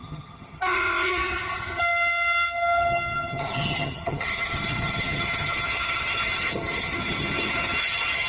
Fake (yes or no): yes